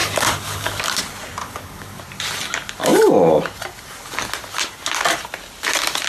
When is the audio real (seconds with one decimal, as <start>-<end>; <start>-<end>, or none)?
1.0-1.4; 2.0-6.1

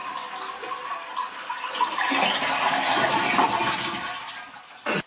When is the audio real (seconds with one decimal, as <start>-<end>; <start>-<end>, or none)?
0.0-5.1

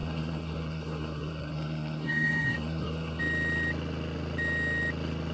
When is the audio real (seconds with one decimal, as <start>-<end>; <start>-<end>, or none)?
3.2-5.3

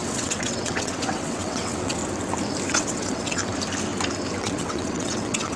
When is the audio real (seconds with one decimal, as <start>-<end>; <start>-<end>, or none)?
2.0-2.7; 3.4-4.4

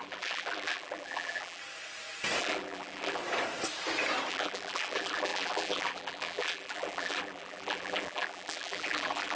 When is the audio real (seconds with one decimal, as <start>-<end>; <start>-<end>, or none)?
1.6-2.4; 3.2-4.3